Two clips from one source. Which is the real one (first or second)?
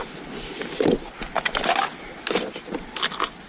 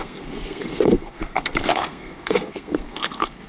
first